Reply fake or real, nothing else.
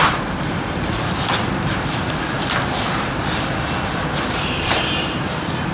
fake